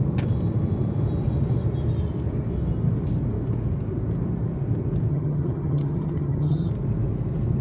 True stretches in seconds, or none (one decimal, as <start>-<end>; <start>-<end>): 0.0-5.1; 6.7-7.6